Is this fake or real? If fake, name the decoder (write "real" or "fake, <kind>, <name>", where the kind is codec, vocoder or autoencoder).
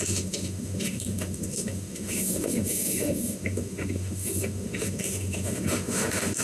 fake, autoencoder, DAC-VAE